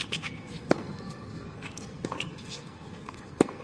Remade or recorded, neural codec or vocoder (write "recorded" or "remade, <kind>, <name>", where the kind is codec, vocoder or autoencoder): remade, codec, SNAC